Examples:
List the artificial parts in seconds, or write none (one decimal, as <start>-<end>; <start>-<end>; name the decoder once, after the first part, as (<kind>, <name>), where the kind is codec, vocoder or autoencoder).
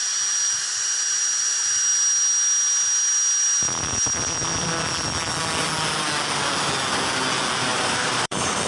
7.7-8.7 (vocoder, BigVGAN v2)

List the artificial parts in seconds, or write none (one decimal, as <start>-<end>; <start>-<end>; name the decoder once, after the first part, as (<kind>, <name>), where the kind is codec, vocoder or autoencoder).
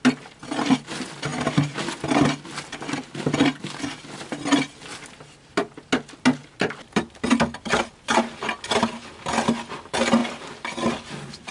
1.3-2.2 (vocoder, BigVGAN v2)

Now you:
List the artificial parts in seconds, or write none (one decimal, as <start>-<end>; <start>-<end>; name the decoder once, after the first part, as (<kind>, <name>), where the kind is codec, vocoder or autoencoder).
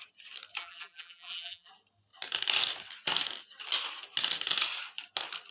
0.6-1.7 (vocoder, BigVGAN v2)